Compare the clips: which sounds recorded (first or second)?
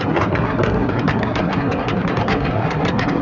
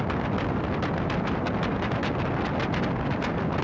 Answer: second